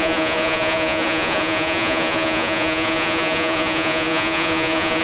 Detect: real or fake fake